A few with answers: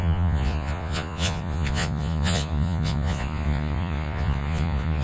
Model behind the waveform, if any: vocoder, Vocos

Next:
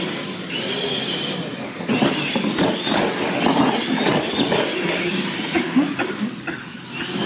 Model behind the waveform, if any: none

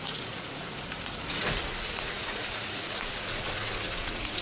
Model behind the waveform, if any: vocoder, Vocos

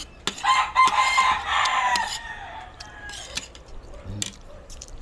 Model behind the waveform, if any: none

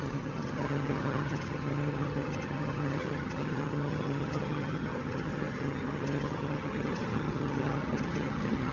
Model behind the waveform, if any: vocoder, HiFi-GAN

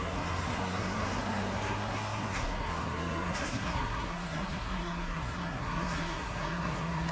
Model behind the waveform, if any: codec, SNAC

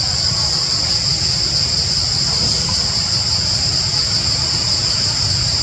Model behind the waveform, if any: none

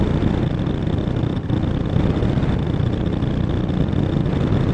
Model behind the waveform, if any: none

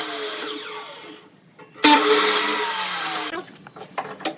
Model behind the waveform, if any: none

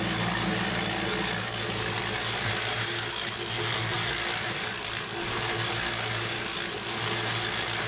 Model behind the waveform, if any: none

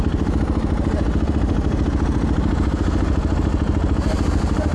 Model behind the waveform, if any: none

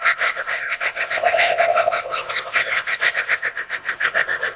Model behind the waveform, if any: codec, ZipCodec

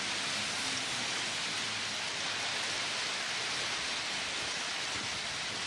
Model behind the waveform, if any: none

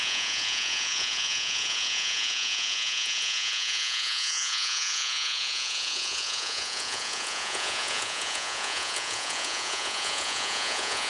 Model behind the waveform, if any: vocoder, Vocos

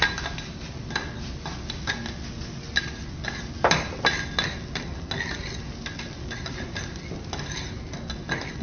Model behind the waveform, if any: none